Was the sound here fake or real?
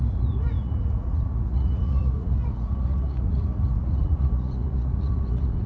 fake